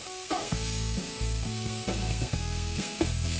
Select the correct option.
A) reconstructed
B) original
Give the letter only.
A